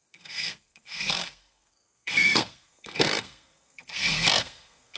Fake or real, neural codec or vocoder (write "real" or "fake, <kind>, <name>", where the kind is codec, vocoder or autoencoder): fake, codec, SNAC